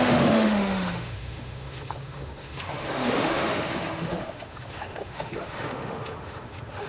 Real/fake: fake